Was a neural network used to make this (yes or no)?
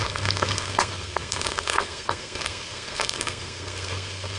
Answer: yes